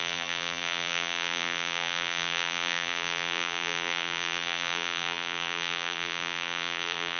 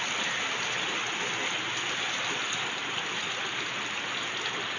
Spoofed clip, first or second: first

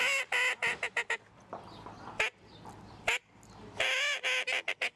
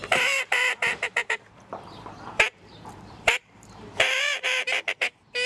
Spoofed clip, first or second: second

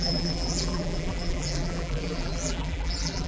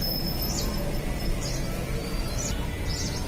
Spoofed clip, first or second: first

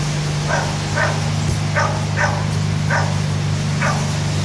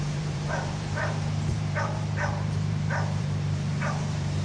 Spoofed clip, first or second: second